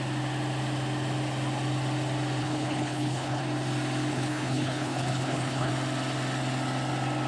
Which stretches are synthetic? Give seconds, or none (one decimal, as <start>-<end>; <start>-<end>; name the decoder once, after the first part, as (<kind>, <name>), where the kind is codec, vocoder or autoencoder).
2.4-3.4 (codec, HILCodec); 4.1-5.7